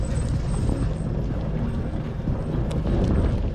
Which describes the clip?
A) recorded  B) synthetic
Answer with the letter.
A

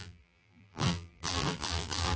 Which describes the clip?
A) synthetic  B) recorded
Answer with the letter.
A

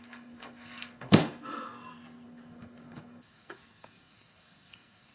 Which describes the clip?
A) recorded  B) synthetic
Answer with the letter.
B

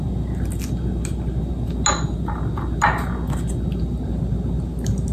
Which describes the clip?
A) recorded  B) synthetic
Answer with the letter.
A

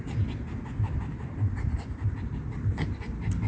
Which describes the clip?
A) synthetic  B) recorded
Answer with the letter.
B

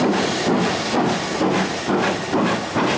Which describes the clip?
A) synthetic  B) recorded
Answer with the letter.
B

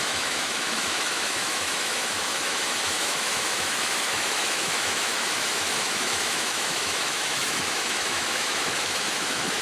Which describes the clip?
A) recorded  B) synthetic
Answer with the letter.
B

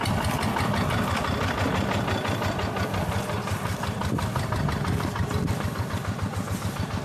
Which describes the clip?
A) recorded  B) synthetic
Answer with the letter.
A